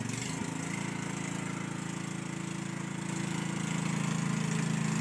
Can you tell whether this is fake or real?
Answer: real